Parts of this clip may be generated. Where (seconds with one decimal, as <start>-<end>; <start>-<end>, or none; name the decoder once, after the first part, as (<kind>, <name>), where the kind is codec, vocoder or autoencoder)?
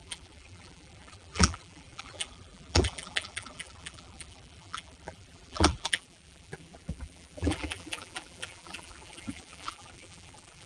0.0-10.7 (vocoder, BigVGAN v2)